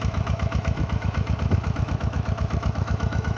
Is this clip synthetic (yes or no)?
yes